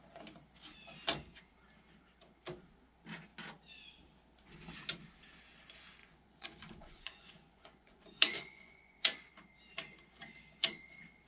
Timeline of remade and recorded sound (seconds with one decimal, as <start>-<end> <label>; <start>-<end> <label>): 0.0-6.0 recorded; 6.0-9.3 remade; 9.3-11.3 recorded